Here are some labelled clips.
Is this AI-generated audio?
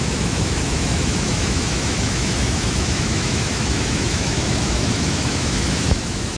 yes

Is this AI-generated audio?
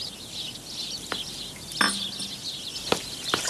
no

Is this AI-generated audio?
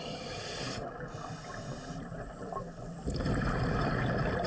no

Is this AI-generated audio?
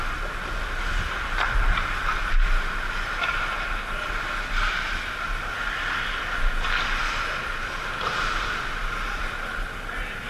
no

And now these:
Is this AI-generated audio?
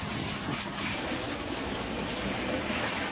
no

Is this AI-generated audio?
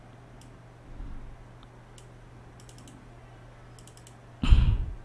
no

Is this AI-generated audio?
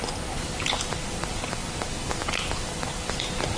no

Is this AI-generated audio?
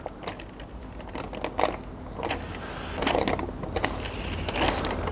no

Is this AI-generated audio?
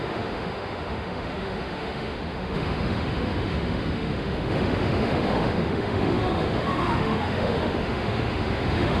yes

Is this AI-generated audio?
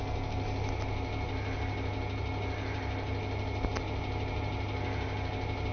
no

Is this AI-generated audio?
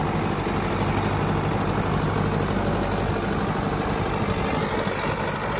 no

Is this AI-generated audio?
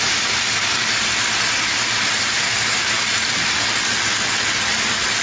no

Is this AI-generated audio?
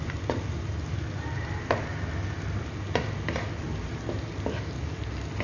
no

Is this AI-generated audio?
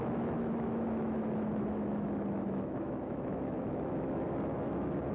yes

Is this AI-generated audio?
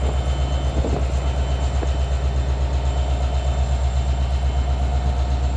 no